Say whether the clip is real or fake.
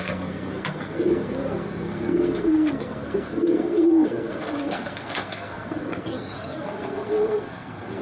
fake